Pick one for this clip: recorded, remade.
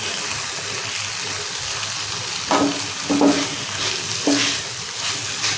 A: recorded